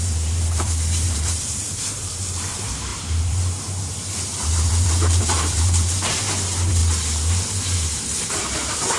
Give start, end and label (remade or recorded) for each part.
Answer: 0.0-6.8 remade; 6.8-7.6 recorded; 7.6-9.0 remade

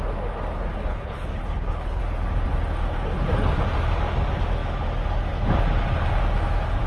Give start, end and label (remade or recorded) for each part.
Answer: 0.0-0.9 recorded; 0.9-2.0 remade; 2.0-6.9 recorded

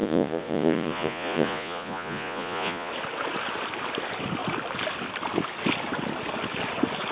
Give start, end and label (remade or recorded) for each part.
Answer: 0.0-2.9 remade; 2.9-7.1 recorded

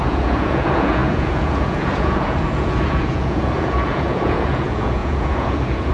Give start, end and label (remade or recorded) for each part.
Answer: 0.0-5.9 remade

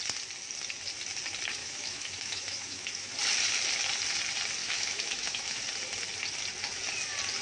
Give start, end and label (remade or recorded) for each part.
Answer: 0.0-1.6 recorded; 1.6-3.1 remade; 3.1-4.6 recorded; 4.6-5.6 remade; 5.6-7.4 recorded

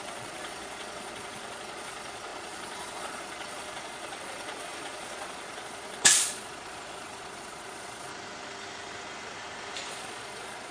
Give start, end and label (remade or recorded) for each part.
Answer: 0.0-8.1 remade; 8.1-9.9 recorded; 9.9-10.7 remade

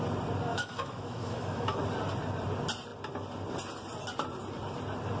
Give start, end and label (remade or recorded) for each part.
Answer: 0.0-0.5 recorded; 0.5-1.8 remade; 1.8-5.2 recorded

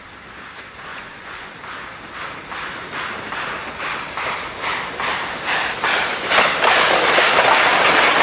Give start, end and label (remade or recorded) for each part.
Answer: 0.0-0.9 recorded; 0.9-1.5 remade; 1.5-8.2 recorded